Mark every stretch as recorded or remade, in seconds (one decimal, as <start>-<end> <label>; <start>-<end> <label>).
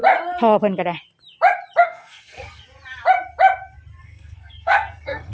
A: 0.0-1.8 recorded; 1.8-2.6 remade; 2.6-4.0 recorded; 4.0-5.3 remade